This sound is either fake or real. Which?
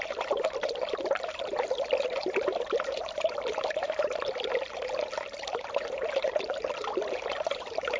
fake